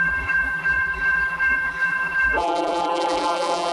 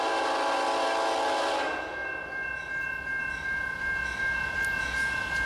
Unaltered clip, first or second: second